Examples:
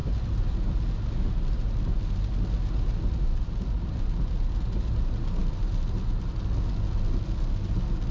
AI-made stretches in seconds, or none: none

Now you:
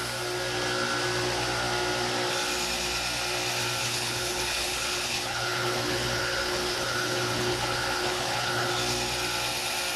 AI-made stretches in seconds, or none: 3.8-8.7

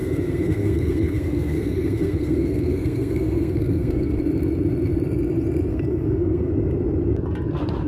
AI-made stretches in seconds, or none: 0.0-4.2; 5.7-6.5

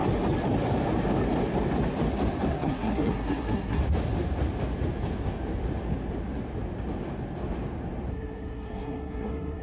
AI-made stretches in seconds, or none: 2.5-3.8; 8.1-9.6

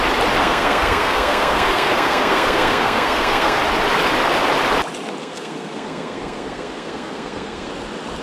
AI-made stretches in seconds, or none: 0.4-3.6; 5.2-7.7

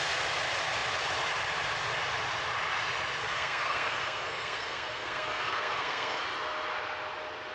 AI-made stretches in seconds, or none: 3.2-6.2

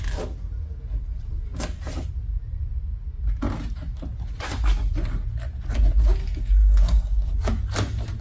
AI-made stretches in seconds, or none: 6.2-7.3

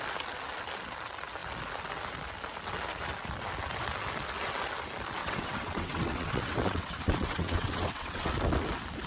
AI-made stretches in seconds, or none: 5.2-8.3